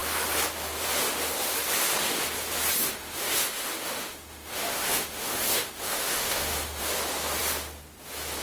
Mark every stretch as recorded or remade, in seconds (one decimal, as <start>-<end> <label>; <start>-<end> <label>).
0.0-2.8 recorded; 2.8-6.8 remade; 6.8-8.4 recorded